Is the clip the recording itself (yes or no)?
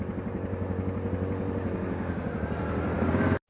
yes